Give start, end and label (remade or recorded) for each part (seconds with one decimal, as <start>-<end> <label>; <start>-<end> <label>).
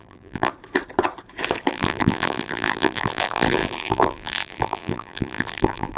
0.0-0.5 remade; 0.5-1.7 recorded; 1.7-6.0 remade